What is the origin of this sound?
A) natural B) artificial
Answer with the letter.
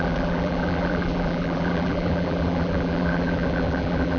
B